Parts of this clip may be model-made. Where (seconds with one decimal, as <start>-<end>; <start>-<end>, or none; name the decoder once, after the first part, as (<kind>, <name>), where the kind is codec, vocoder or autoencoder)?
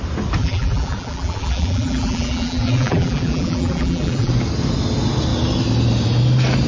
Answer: 0.4-4.3 (vocoder, BigVGAN v2)